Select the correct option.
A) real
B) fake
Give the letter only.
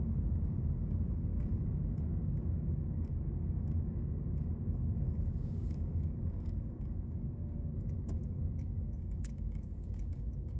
B